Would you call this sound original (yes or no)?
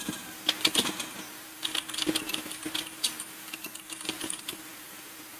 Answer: no